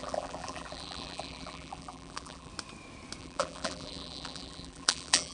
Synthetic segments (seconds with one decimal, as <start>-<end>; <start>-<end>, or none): 0.0-2.5; 3.2-5.3